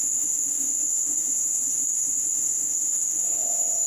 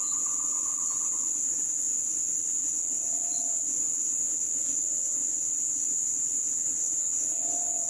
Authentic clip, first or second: second